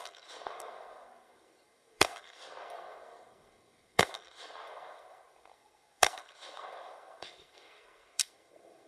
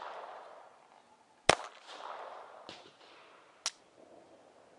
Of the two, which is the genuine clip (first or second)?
second